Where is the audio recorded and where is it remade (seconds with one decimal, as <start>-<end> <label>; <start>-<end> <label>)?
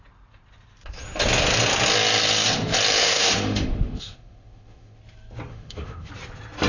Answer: 0.0-3.0 recorded; 3.0-5.0 remade; 5.0-5.5 recorded; 5.5-6.1 remade; 6.1-6.7 recorded